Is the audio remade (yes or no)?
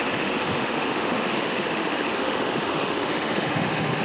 yes